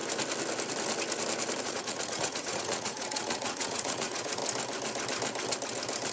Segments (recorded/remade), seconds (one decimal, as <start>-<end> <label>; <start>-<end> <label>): 0.0-1.6 recorded; 1.6-4.4 remade; 4.4-6.1 recorded